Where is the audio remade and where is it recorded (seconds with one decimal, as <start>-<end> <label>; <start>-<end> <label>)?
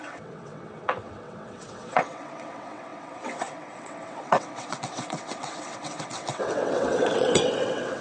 0.0-8.0 remade